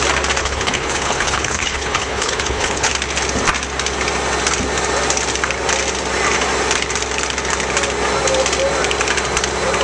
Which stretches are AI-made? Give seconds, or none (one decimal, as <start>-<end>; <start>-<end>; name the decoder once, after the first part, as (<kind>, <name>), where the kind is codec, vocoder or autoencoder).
0.4-2.9 (codec, HILCodec)